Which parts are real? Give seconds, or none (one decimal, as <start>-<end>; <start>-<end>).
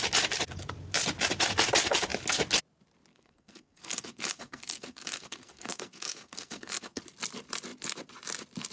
0.0-3.1; 7.0-8.7